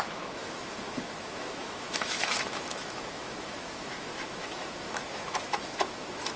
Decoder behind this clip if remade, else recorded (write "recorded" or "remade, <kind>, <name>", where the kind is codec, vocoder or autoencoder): remade, autoencoder, DAC-VAE